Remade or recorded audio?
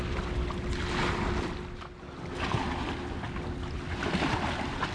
recorded